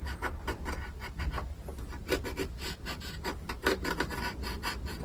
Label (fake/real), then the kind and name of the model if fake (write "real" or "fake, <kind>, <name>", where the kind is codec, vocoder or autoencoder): real